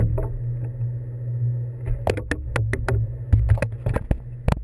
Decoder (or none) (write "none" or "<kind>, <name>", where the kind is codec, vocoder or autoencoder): none